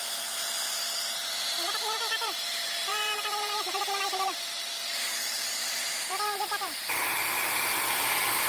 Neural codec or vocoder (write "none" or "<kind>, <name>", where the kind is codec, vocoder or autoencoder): vocoder, BigVGAN v2